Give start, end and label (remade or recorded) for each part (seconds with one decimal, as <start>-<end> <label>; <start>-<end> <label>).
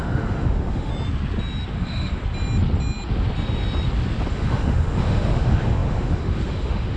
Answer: 0.0-0.9 remade; 0.9-1.7 recorded; 1.7-2.2 remade; 2.2-4.3 recorded; 4.3-7.0 remade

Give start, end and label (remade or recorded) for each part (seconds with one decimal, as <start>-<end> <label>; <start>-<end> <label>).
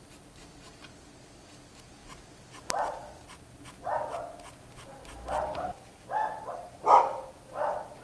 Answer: 0.0-8.0 recorded